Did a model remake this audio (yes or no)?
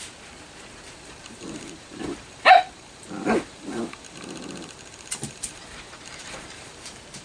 yes